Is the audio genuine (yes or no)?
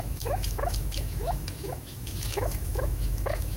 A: no